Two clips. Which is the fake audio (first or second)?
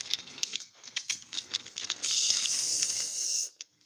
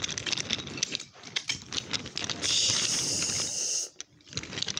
first